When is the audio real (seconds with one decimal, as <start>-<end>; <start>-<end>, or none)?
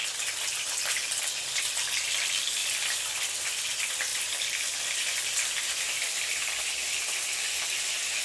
1.2-2.6; 3.6-4.1; 6.4-8.2